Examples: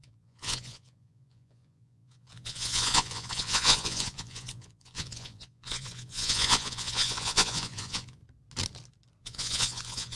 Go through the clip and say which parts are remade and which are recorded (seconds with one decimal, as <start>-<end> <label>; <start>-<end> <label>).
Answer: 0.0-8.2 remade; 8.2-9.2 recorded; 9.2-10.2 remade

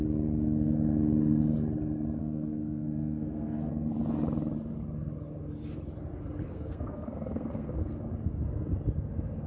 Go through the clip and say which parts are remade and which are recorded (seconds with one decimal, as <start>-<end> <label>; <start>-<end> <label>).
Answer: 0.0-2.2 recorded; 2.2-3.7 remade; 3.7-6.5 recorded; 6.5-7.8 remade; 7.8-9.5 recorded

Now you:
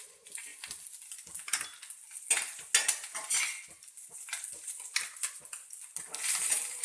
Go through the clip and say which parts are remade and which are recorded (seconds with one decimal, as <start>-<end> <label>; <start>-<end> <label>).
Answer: 0.0-6.8 recorded